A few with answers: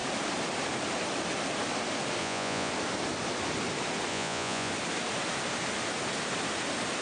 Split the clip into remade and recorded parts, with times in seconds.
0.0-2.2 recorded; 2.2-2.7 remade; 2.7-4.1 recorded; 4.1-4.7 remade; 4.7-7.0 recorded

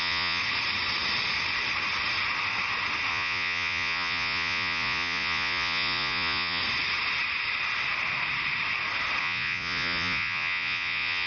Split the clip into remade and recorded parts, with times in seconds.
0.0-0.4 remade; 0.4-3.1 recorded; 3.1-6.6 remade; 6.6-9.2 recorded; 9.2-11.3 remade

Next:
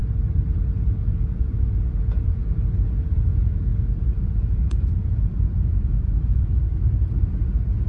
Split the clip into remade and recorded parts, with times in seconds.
0.0-0.6 recorded; 0.6-2.4 remade; 2.4-3.0 recorded; 3.0-7.9 remade

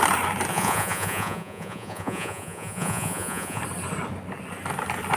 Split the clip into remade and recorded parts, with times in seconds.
0.0-0.5 recorded; 0.5-3.6 remade; 3.6-5.2 recorded

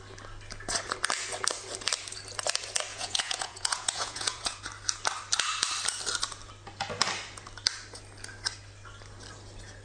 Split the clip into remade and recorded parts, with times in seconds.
0.0-2.9 recorded; 2.9-4.6 remade; 4.6-9.8 recorded

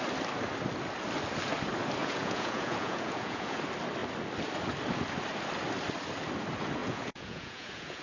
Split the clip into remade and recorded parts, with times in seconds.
0.0-2.0 recorded; 2.0-3.6 remade; 3.6-6.8 recorded; 6.8-8.0 remade